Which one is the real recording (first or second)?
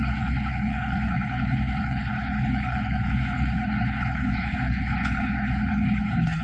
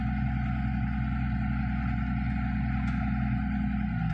second